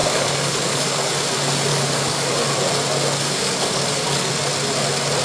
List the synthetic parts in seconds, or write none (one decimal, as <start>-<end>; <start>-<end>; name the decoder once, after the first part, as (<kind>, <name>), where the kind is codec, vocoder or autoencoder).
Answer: 0.0-1.1 (codec, DAC); 1.7-2.3; 3.3-4.3